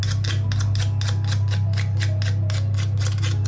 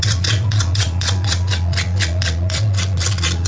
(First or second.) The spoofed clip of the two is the second